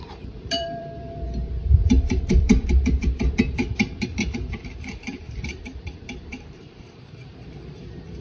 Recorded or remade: remade